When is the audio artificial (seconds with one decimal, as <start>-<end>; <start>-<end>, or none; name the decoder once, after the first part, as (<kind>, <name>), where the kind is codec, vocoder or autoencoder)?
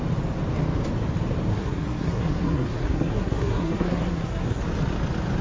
1.5-4.6 (codec, SNAC)